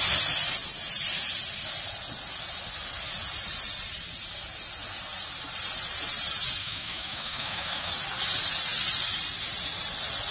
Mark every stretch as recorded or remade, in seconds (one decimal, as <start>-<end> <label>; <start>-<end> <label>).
0.0-6.6 recorded; 6.6-7.9 remade; 7.9-10.3 recorded